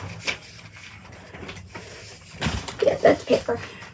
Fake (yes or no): no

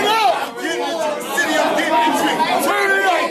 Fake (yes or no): no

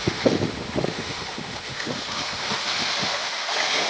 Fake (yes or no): yes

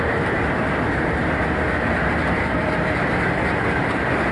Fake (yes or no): no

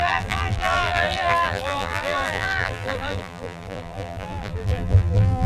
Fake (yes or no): yes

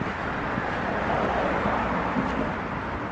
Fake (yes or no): no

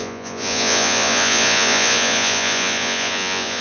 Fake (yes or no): yes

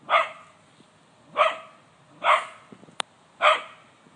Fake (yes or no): no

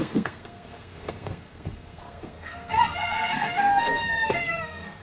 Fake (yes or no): yes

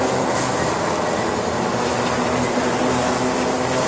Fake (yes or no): no